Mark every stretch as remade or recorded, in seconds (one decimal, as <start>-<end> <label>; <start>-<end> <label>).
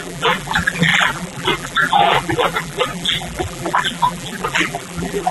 0.0-5.3 remade